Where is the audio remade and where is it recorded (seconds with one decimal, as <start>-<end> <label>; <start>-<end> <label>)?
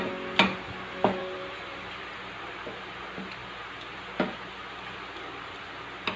0.0-1.2 recorded; 1.2-2.4 remade; 2.4-6.2 recorded